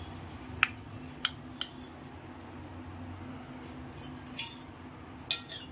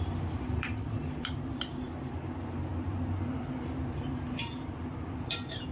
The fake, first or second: second